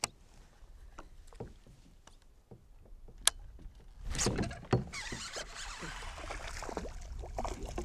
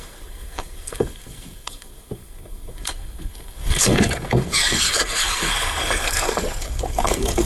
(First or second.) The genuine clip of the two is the first